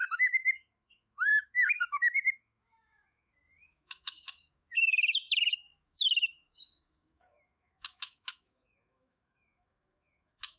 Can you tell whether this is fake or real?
fake